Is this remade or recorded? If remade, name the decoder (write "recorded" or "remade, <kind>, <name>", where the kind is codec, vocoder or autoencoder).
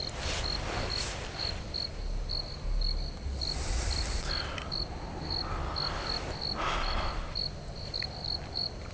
recorded